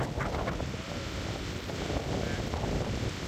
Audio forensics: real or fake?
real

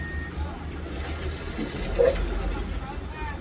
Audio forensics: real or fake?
real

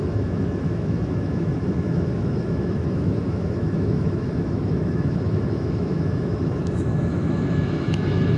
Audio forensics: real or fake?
fake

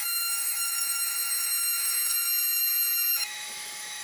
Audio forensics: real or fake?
fake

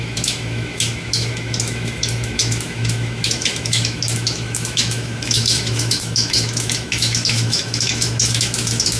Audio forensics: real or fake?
fake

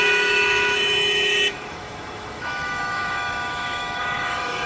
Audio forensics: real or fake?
fake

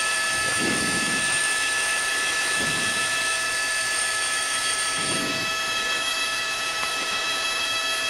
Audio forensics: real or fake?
fake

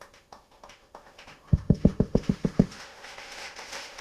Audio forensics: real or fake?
fake